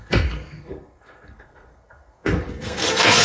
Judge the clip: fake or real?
fake